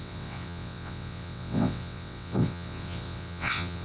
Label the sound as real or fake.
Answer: fake